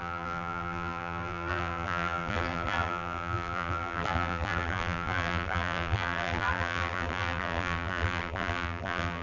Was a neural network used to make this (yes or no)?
yes